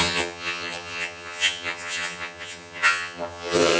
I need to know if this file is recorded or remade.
remade